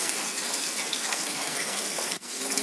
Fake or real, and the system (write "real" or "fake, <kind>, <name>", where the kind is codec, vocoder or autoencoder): fake, codec, SNAC